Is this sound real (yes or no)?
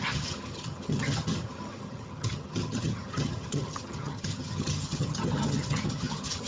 no